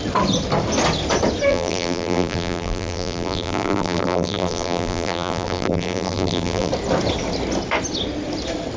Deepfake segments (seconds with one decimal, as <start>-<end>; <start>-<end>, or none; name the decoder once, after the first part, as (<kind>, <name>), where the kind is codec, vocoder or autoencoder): 1.5-6.7 (vocoder, BigVGAN v2)